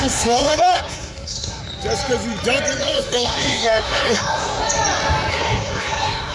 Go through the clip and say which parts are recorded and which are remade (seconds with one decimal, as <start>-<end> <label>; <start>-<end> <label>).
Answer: 0.0-1.6 remade; 1.6-2.8 recorded; 2.8-4.6 remade; 4.6-5.3 recorded; 5.3-6.3 remade